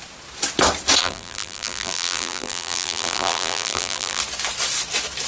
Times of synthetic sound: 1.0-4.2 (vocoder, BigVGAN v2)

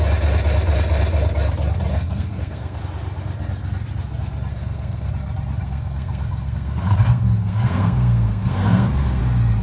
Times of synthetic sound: 1.9-2.8 (codec, SNAC); 4.5-5.1; 5.6-9.2

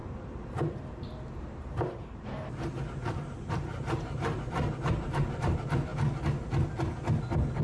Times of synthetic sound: 0.0-5.9 (vocoder, BigVGAN v2)

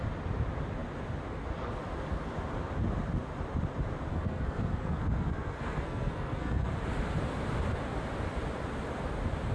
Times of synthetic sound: 4.1-6.7 (codec, SNAC)

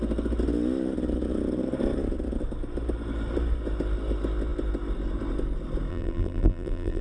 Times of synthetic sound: 5.9-7.0 (vocoder, BigVGAN v2)

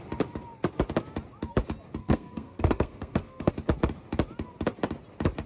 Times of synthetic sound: 2.0-3.5 (codec, SNAC)

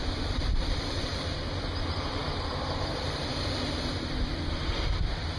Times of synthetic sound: 0.0-1.1 (vocoder, BigVGAN v2); 1.8-2.2